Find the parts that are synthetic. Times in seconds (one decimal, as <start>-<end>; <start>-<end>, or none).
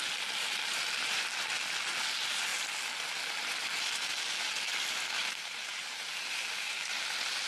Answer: 0.4-1.2; 5.2-6.8